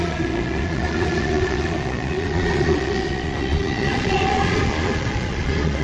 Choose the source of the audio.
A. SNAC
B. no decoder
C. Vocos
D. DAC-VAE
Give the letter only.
C